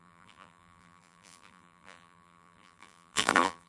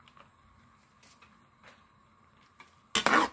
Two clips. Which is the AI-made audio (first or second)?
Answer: first